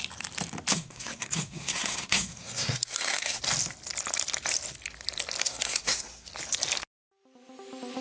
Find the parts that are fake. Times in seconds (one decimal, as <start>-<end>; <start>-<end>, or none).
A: 0.7-3.4; 5.4-6.3